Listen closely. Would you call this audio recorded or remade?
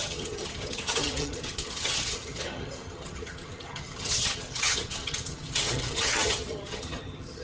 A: remade